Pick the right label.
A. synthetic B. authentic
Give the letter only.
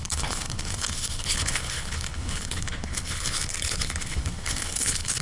A